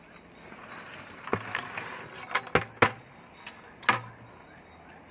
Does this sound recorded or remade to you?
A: recorded